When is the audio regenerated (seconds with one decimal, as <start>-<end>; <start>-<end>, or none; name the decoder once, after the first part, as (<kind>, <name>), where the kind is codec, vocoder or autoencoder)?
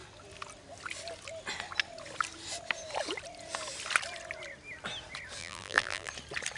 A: 5.4-6.1 (vocoder, BigVGAN v2)